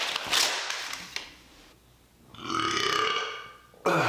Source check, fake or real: real